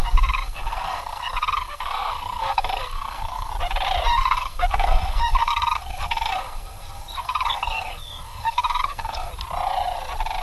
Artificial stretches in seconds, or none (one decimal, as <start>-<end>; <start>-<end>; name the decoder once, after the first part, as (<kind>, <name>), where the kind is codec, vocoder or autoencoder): 0.0-3.5 (codec, SNAC); 4.1-9.3